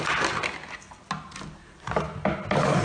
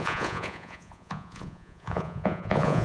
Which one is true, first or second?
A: first